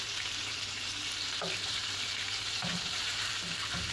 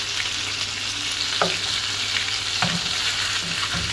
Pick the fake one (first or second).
first